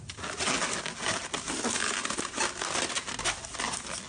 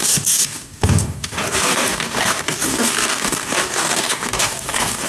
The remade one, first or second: second